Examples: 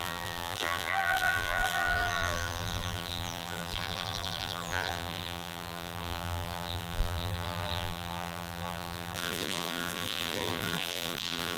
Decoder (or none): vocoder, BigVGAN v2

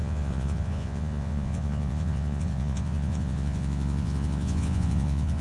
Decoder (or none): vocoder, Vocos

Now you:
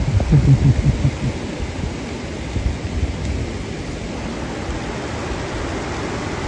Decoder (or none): none